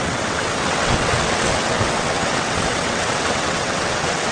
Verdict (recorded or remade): remade